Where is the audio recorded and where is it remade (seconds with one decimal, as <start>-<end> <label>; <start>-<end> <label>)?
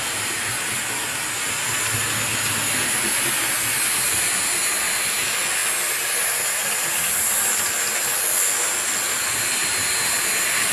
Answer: 0.0-10.7 recorded